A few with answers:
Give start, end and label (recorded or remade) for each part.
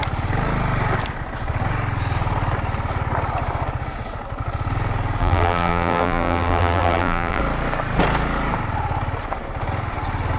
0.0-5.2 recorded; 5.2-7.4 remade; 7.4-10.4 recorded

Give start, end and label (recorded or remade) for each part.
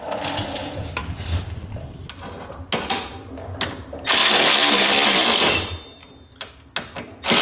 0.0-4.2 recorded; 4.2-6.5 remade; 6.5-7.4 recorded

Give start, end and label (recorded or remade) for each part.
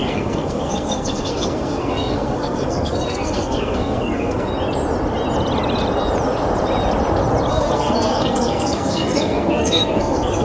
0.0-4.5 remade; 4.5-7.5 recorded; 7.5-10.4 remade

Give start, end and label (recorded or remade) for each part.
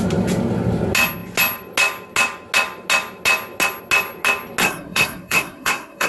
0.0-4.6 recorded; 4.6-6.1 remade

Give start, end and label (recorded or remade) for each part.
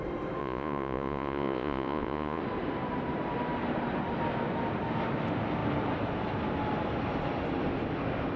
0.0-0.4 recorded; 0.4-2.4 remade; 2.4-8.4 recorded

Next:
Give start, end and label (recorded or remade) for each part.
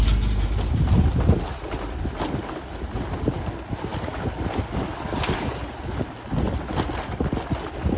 0.0-8.0 recorded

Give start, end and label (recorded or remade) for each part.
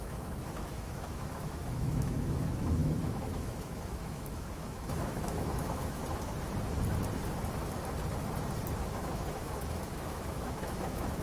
0.0-6.0 remade; 6.0-8.8 recorded; 8.8-11.2 remade